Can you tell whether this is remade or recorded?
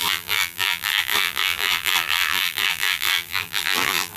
remade